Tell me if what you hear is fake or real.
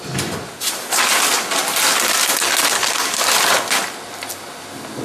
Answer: real